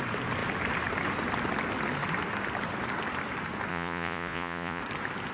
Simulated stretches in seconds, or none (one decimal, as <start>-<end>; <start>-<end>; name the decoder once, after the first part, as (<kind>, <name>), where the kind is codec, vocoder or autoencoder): 3.7-4.8 (vocoder, Vocos)